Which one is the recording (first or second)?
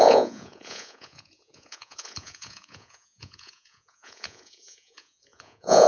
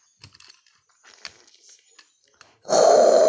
second